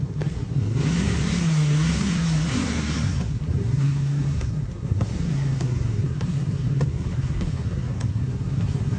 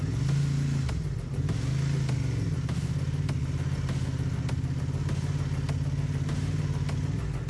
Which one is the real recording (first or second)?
second